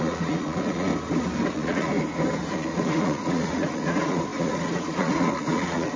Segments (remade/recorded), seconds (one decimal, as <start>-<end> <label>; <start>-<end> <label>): 0.0-0.9 remade; 0.9-1.5 recorded; 1.5-1.9 remade; 1.9-2.5 recorded; 2.5-6.0 remade